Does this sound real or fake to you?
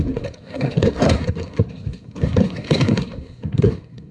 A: fake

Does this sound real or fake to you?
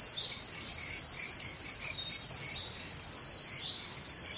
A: real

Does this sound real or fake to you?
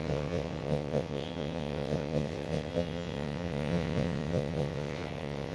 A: fake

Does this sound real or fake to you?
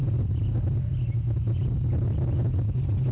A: real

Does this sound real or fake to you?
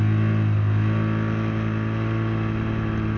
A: real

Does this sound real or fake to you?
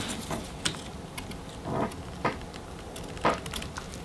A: real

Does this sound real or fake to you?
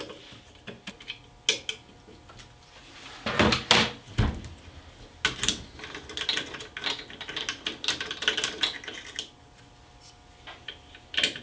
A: real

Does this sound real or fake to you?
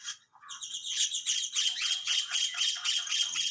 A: fake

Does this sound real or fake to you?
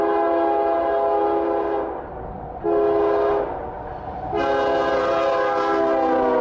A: real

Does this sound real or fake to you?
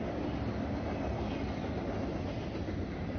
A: real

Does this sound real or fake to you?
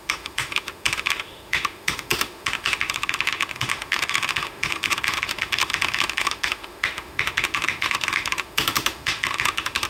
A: fake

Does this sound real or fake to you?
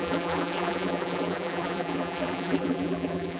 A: fake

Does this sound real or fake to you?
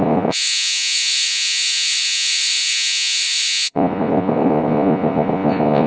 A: fake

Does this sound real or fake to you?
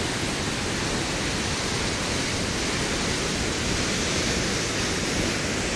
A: real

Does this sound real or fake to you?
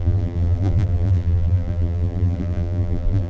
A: fake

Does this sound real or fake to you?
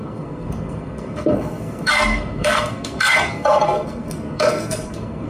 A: fake